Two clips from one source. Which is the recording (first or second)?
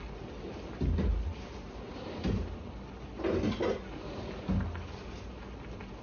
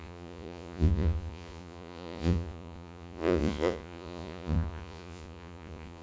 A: first